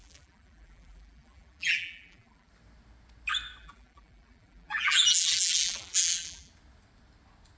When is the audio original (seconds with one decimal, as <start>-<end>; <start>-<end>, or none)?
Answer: 2.5-3.6; 6.5-7.6